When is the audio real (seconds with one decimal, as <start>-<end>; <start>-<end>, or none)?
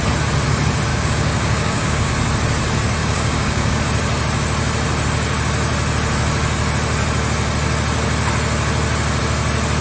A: 0.0-0.9; 2.1-3.0; 3.8-9.8